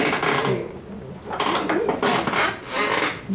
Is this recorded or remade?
recorded